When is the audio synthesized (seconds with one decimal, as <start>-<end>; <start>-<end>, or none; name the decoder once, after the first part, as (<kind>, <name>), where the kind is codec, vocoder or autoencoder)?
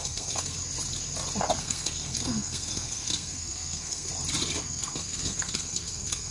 0.0-0.6 (codec, SNAC); 1.6-4.1; 4.6-6.3